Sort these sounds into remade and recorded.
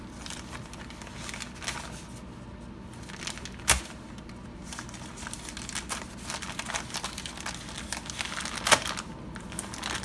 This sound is recorded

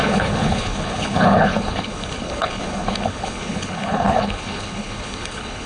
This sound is remade